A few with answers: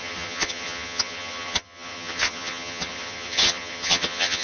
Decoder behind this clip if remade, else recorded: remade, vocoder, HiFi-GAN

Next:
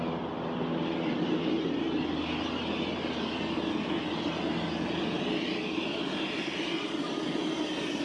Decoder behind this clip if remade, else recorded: recorded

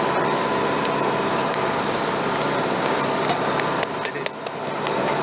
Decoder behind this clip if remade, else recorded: remade, vocoder, BigVGAN v2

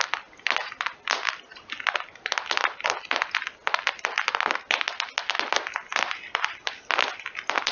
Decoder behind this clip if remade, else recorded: recorded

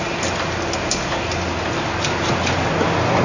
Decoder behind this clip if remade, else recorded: recorded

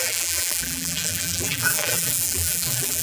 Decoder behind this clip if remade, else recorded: remade, vocoder, BigVGAN v2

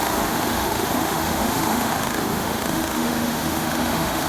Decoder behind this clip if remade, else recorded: remade, autoencoder, DAC-VAE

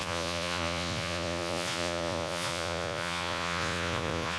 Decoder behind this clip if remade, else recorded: remade, vocoder, Vocos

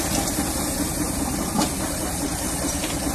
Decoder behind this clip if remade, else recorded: recorded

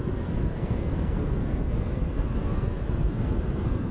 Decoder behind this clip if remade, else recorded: remade, codec, SNAC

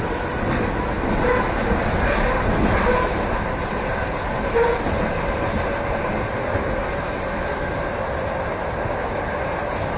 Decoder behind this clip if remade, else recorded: recorded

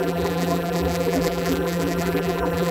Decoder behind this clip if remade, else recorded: remade, vocoder, BigVGAN v2